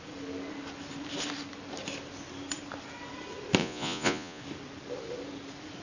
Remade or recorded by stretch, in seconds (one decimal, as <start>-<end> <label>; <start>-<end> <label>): 0.0-3.6 recorded; 3.6-4.4 remade; 4.4-5.8 recorded